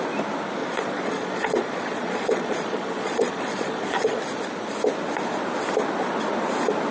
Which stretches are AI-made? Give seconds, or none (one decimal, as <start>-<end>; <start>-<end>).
0.6-4.2